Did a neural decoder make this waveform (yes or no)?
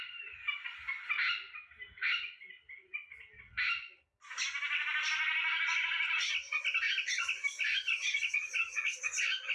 no